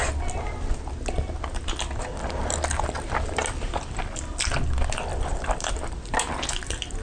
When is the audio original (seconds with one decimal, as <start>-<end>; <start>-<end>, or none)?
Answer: 0.0-2.4; 4.4-5.1; 5.7-7.0